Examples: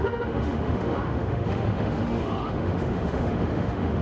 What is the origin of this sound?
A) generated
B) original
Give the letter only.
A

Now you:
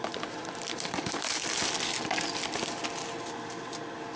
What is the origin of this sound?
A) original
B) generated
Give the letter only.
A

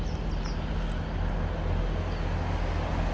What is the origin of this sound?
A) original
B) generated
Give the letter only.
A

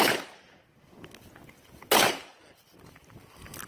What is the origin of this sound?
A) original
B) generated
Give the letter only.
A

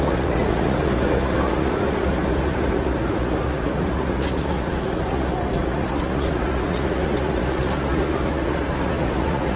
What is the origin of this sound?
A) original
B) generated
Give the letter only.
B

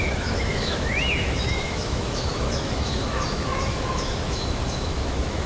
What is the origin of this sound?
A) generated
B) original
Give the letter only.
A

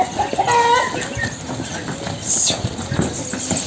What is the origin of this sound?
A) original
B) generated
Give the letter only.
A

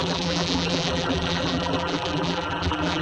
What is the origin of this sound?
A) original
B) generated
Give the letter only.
B